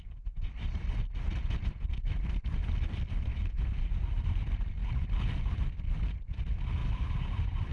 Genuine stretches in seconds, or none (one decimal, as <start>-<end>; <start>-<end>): 0.0-3.3; 3.9-7.7